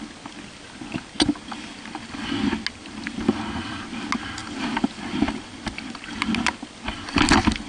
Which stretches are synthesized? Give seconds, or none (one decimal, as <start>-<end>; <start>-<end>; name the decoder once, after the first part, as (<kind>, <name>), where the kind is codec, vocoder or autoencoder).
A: none